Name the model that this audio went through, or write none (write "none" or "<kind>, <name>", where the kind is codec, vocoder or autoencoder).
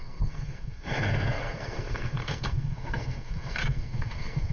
codec, SNAC